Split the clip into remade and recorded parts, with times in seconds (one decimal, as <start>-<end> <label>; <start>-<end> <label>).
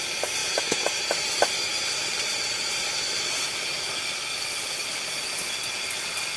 0.0-0.4 recorded; 0.4-1.0 remade; 1.0-6.4 recorded